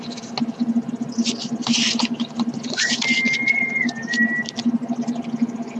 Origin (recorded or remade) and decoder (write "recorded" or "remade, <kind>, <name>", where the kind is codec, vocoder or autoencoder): recorded